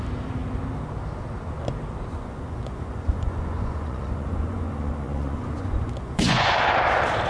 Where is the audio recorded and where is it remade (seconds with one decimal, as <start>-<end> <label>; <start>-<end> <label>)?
0.0-2.1 recorded; 2.1-6.5 remade; 6.5-7.3 recorded